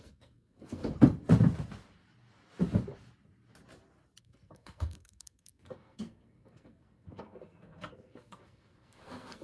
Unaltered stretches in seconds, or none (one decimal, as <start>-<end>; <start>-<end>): 0.8-4.2